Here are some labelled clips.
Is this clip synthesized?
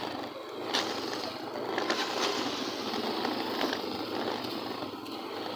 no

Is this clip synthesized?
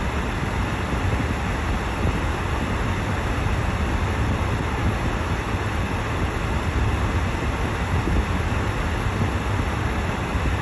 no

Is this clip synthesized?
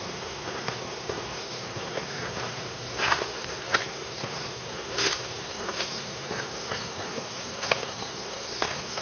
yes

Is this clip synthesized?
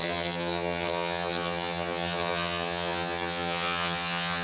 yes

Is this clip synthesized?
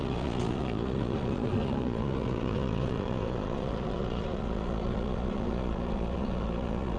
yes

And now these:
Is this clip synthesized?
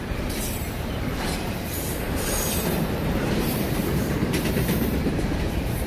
yes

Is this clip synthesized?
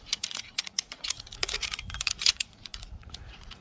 yes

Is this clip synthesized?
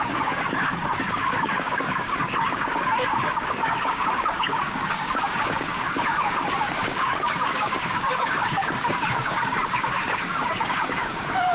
yes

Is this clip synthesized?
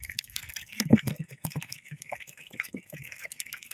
yes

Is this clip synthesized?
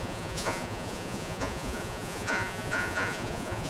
yes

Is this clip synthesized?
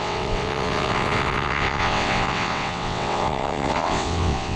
yes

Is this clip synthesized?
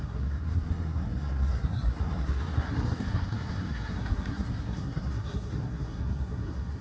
yes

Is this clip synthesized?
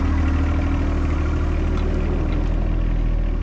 no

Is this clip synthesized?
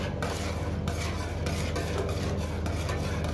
no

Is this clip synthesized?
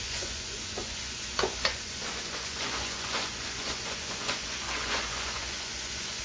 yes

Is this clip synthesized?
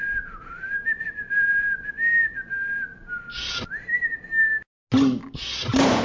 no